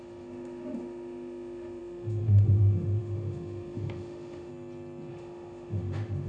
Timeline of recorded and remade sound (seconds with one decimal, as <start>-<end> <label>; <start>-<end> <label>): 0.0-4.5 remade; 4.5-5.1 recorded; 5.1-6.3 remade